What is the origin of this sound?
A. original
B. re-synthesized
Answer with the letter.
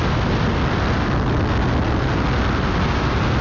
A